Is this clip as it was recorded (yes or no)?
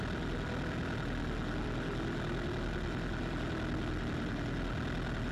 yes